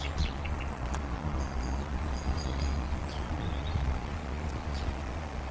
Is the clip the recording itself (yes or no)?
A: no